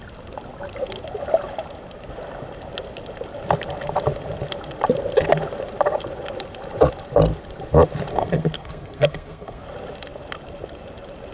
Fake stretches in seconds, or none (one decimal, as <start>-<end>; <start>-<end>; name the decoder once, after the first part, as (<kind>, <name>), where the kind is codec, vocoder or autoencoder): 8.1-9.6 (codec, SNAC)